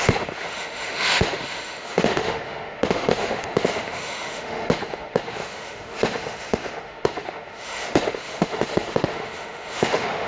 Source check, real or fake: fake